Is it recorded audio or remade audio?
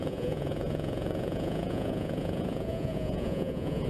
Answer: remade